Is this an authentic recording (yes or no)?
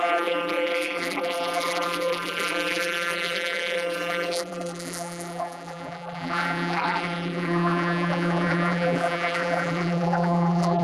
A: no